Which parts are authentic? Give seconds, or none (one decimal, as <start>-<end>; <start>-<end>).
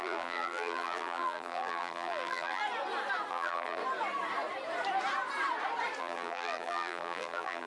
2.6-3.3; 3.8-6.0